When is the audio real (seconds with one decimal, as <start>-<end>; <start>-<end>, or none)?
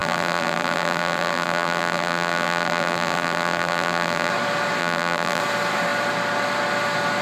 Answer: 4.3-4.8; 5.4-7.2